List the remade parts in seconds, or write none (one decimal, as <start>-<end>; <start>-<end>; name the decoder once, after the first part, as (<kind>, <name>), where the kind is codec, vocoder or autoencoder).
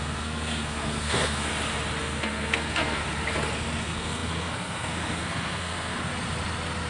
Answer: 0.0-1.5 (codec, SNAC); 2.0-3.0; 3.8-6.1